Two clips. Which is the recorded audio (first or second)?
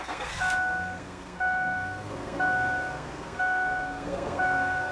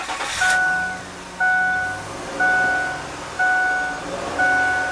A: second